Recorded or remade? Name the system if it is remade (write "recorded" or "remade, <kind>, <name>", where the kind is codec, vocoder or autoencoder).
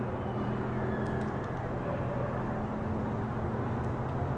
recorded